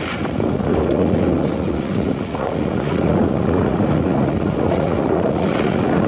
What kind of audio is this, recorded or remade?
remade